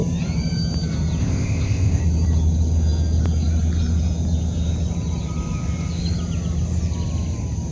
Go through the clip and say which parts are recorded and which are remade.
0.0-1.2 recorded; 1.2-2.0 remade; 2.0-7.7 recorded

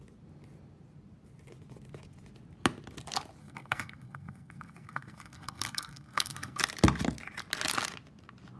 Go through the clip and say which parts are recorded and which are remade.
0.0-3.4 recorded; 3.4-6.6 remade; 6.6-8.6 recorded

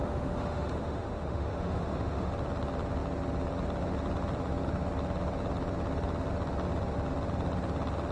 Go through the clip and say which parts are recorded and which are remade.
0.0-2.3 remade; 2.3-8.1 recorded

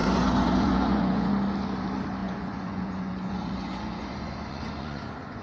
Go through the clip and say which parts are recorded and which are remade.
0.0-1.3 remade; 1.3-2.2 recorded; 2.2-5.4 remade